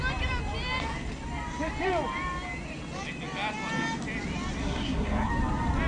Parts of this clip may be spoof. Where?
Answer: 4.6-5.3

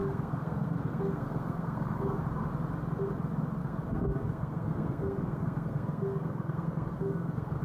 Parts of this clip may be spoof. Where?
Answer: 0.0-2.2; 3.6-7.6

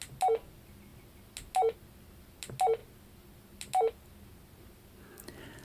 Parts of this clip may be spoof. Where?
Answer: none

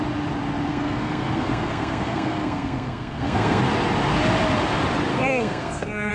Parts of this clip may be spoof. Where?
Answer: 0.7-3.6; 5.1-6.1

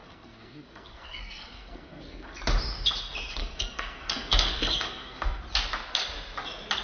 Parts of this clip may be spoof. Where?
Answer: 0.0-2.4; 3.4-5.4

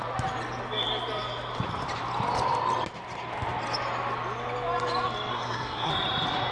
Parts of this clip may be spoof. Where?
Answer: 5.3-5.9